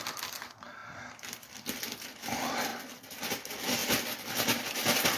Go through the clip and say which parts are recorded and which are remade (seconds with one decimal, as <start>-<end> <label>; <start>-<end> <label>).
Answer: 0.0-5.2 recorded